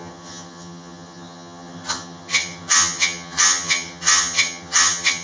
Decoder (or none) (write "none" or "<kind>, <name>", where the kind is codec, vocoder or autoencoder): vocoder, HiFi-GAN